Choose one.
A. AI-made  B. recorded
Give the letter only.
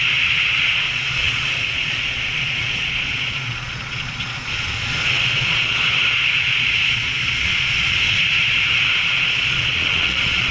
A